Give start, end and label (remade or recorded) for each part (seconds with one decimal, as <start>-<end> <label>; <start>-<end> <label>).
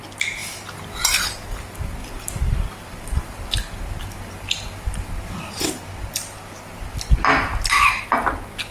0.0-2.0 recorded; 2.0-6.9 remade; 6.9-8.7 recorded